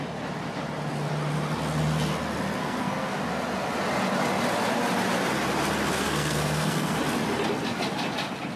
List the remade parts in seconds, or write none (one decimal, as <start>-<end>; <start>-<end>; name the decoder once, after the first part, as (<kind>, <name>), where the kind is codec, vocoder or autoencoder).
2.6-3.2 (codec, SNAC); 5.9-7.0